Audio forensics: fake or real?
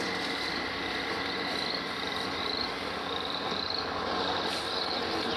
real